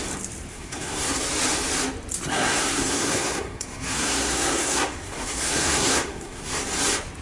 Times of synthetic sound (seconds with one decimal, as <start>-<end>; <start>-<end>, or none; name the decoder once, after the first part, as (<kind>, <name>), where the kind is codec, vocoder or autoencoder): 0.5-1.2 (codec, SNAC); 2.3-6.6